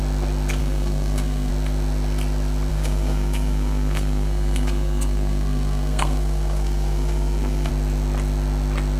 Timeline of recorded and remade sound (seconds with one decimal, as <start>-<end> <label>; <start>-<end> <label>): 0.0-0.6 recorded; 0.6-1.5 remade; 1.5-2.7 recorded; 2.7-7.7 remade; 7.7-9.0 recorded